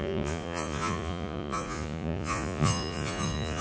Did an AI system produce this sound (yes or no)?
yes